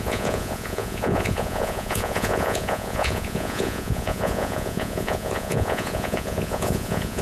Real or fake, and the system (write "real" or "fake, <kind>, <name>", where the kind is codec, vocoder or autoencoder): fake, vocoder, Vocos